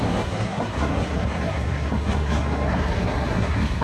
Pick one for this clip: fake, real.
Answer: fake